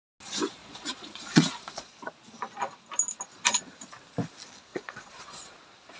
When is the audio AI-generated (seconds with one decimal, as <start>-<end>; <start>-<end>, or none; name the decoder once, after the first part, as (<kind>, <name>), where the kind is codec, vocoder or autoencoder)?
0.6-2.1 (vocoder, Vocos); 4.7-5.5

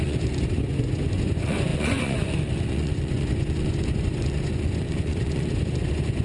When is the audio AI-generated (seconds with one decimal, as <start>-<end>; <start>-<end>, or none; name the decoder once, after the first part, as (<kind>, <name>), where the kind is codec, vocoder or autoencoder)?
0.0-6.2 (vocoder, Vocos)

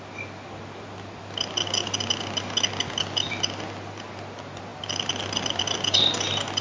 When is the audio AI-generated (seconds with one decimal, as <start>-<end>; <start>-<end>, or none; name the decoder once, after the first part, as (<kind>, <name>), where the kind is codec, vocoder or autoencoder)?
none

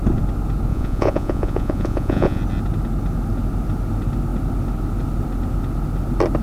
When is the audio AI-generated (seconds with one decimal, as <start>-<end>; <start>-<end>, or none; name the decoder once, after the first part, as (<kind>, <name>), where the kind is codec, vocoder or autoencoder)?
0.7-2.4 (vocoder, Vocos)

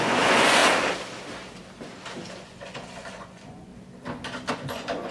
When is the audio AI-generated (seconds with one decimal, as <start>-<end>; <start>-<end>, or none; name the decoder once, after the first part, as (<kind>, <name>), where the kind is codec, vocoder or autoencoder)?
0.0-0.6 (vocoder, Vocos); 2.3-3.7; 4.5-5.1

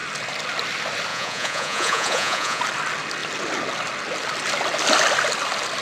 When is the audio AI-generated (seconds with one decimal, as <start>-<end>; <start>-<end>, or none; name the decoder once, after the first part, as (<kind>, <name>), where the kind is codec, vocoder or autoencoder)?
1.1-2.6 (vocoder, Vocos)